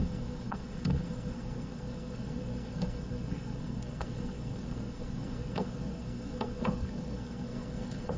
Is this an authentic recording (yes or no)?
no